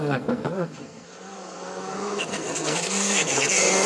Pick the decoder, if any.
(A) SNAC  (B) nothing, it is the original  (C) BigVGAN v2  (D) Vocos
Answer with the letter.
A